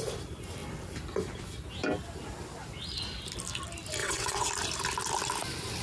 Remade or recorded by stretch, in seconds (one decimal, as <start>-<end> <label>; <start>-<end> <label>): 0.0-4.0 recorded; 4.0-4.5 remade; 4.5-5.8 recorded